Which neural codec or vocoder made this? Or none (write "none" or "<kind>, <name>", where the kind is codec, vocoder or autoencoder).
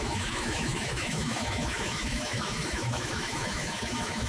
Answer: autoencoder, DAC-VAE